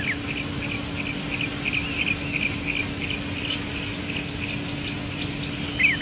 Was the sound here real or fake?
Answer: real